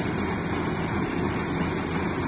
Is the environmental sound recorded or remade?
recorded